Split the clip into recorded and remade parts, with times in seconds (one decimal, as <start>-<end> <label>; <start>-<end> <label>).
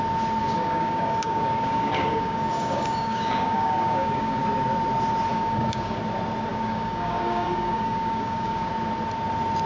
0.0-0.4 recorded; 0.4-4.4 remade; 4.4-5.3 recorded; 5.3-6.0 remade; 6.0-6.5 recorded; 6.5-8.7 remade; 8.7-9.7 recorded